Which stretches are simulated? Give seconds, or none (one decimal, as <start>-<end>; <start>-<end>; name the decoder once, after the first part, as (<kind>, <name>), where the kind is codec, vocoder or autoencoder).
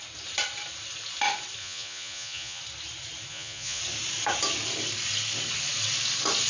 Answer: 1.6-2.6 (vocoder, Vocos); 3.3-3.8